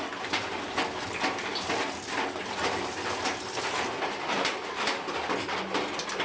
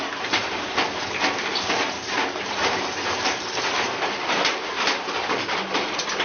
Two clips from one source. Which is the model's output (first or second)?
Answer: second